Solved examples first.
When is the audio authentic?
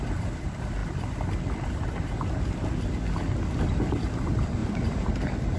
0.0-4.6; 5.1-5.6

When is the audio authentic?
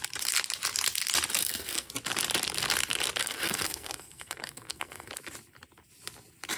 0.0-1.4; 1.9-3.2; 5.1-6.6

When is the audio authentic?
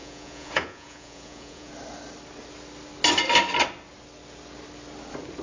1.7-5.4